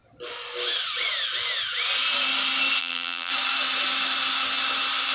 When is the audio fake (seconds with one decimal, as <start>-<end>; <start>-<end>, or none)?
2.8-3.3